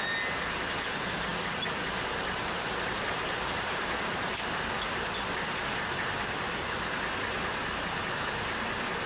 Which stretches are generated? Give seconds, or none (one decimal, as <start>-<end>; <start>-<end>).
none